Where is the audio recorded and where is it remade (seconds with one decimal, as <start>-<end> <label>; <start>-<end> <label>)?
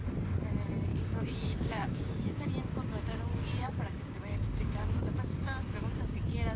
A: 0.0-0.9 recorded; 0.9-2.5 remade; 2.5-3.6 recorded; 3.6-4.9 remade; 4.9-6.6 recorded